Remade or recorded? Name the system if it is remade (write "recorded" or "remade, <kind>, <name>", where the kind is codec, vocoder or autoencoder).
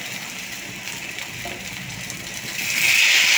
recorded